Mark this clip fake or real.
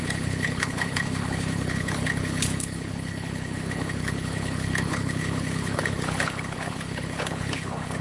fake